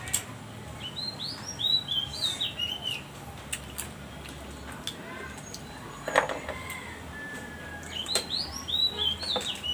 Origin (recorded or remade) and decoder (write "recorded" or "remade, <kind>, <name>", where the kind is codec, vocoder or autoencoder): recorded